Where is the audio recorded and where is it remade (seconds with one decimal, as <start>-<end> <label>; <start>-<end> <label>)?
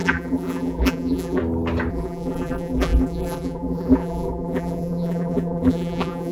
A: 0.0-1.4 remade; 1.4-1.9 recorded; 1.9-6.3 remade